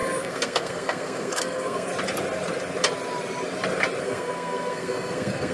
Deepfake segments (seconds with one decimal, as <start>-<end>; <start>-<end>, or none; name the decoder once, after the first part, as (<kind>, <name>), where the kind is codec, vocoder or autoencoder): 0.0-1.9 (codec, SNAC); 4.0-5.5